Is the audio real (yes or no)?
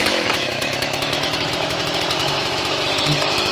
no